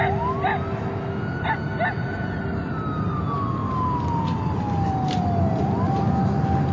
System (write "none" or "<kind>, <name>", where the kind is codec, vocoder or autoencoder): none